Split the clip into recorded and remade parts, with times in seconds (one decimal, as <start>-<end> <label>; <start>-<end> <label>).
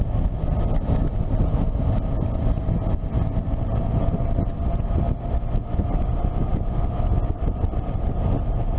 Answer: 0.0-8.8 recorded